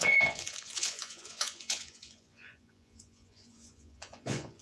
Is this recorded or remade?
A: remade